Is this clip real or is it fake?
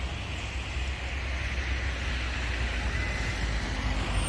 real